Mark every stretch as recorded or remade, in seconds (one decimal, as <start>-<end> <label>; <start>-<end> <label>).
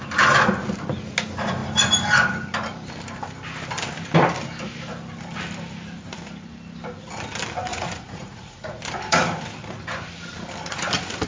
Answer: 0.0-7.7 recorded; 7.7-8.8 remade; 8.8-11.3 recorded